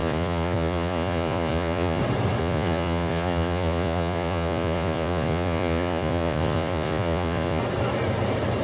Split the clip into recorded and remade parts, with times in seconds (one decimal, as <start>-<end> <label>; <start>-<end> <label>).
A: 0.0-2.0 remade; 2.0-2.4 recorded; 2.4-7.6 remade; 7.6-8.6 recorded